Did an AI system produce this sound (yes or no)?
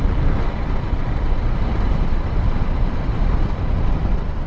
no